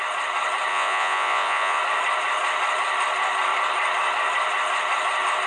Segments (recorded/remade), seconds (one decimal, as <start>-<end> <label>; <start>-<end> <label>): 0.0-0.7 recorded; 0.7-1.8 remade; 1.8-5.5 recorded

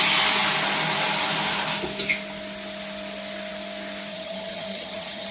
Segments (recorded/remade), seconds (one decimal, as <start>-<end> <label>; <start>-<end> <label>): 0.0-4.1 recorded; 4.1-5.3 remade